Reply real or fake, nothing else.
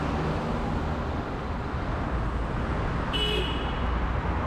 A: real